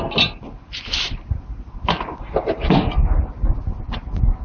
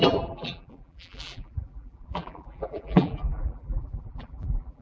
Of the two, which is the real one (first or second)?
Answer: first